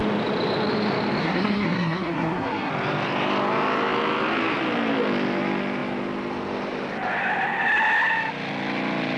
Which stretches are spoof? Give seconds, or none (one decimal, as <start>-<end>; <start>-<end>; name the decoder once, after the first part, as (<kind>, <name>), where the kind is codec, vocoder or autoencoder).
1.2-2.7 (codec, SNAC)